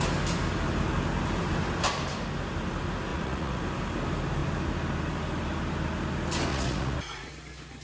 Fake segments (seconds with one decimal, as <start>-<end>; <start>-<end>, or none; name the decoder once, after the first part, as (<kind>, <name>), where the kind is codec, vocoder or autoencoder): 3.1-3.6 (vocoder, Vocos); 6.5-7.3